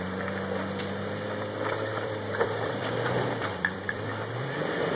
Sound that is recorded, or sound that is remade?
remade